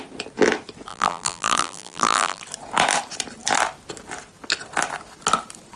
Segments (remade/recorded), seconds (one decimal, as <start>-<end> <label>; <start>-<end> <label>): 0.0-0.9 recorded; 0.9-2.4 remade; 2.4-5.8 recorded